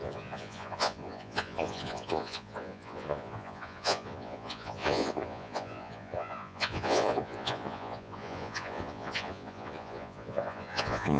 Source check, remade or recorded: remade